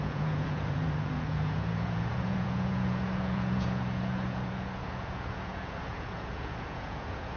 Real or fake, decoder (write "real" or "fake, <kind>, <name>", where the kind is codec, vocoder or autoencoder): fake, vocoder, Vocos